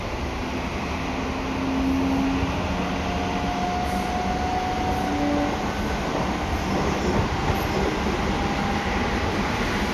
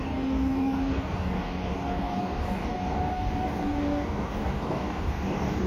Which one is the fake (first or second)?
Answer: second